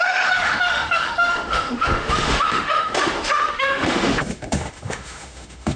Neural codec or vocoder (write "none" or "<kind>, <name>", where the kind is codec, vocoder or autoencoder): autoencoder, DAC-VAE